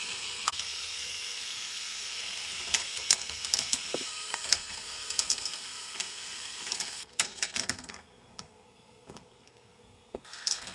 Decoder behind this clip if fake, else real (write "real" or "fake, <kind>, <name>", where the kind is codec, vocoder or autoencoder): fake, codec, SNAC